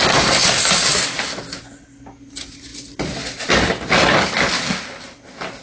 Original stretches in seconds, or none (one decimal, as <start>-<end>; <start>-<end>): 0.0-5.6